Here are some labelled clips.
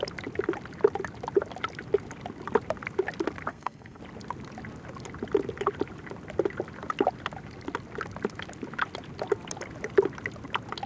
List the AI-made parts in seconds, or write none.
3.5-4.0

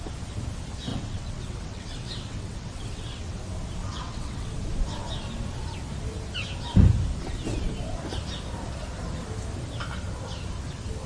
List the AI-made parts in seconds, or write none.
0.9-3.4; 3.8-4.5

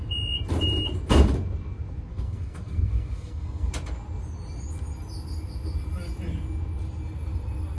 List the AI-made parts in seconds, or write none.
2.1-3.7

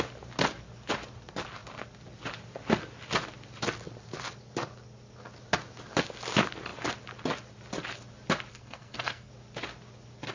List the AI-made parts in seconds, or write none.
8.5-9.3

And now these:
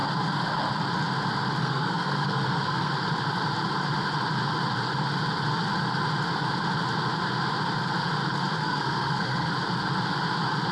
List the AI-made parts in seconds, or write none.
1.6-2.9; 8.6-9.5

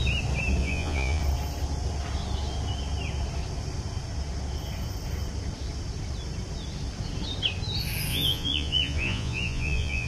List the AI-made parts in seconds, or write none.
0.6-1.2; 8.1-10.1